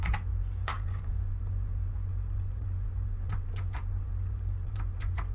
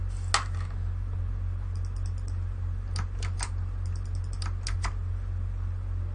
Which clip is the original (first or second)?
second